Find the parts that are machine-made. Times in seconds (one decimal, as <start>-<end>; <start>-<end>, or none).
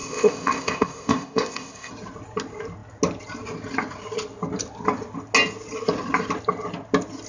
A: 0.0-1.9